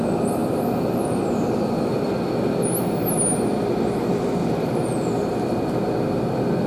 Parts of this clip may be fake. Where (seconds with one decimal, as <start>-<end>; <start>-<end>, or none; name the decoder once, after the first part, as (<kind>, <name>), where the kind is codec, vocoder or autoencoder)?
0.4-1.2 (vocoder, BigVGAN v2)